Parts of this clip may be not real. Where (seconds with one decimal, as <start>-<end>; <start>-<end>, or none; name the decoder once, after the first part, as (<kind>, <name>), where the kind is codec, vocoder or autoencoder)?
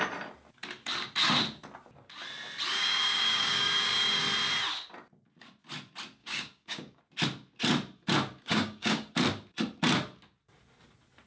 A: 2.7-4.2 (codec, DAC); 6.2-7.0; 8.5-9.1